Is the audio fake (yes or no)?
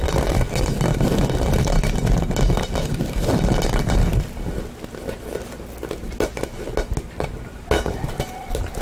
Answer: no